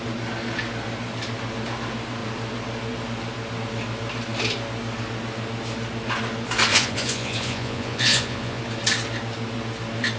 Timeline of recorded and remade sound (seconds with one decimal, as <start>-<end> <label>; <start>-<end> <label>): 0.0-6.7 recorded; 6.7-8.6 remade; 8.6-10.2 recorded